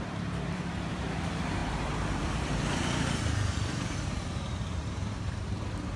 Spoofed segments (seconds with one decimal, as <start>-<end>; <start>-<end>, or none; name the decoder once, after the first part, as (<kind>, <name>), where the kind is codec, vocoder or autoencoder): 0.0-6.0 (vocoder, BigVGAN v2)